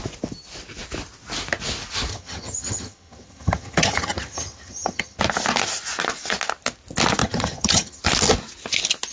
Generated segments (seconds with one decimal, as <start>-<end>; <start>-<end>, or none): 2.1-5.2; 7.2-8.0